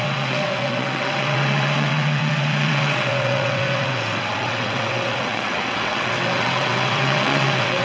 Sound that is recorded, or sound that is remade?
remade